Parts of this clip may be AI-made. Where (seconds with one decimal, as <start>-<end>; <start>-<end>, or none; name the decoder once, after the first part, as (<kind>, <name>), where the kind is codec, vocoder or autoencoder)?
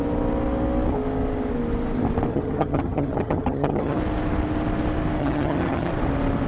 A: 2.3-4.0 (vocoder, HiFi-GAN); 5.2-5.9